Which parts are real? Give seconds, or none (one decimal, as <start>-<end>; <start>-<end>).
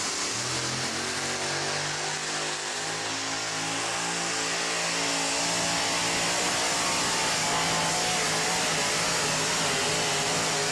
0.0-10.7